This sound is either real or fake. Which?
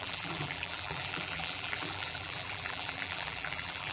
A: fake